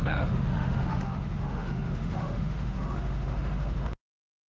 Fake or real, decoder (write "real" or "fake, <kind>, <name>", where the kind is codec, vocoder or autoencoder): fake, autoencoder, DAC-VAE